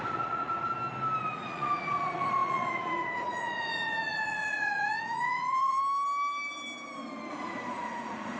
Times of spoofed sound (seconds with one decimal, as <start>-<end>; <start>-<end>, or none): 0.0-0.7; 1.2-5.8; 7.3-8.4